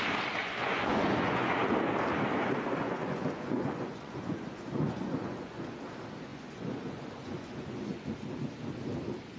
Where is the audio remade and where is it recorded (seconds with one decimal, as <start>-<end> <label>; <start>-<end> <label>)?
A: 0.0-0.4 recorded; 0.4-1.7 remade; 1.7-2.8 recorded; 2.8-5.8 remade; 5.8-6.3 recorded; 6.3-8.1 remade; 8.1-9.4 recorded